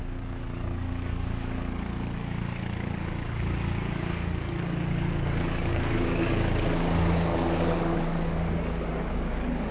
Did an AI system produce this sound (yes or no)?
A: yes